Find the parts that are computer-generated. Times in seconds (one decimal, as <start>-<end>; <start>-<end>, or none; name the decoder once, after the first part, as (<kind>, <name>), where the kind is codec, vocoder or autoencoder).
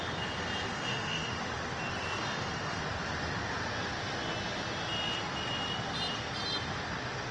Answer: 0.7-1.4 (autoencoder, DAC-VAE); 2.2-2.8